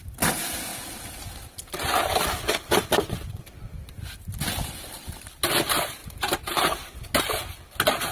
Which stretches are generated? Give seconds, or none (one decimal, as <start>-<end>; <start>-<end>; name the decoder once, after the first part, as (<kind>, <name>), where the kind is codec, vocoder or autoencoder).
none